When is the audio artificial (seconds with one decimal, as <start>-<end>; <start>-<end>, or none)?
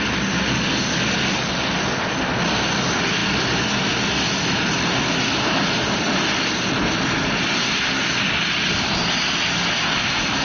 none